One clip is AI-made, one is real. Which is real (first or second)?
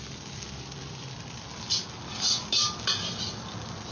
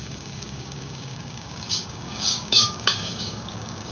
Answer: first